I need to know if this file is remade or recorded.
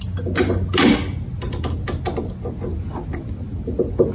recorded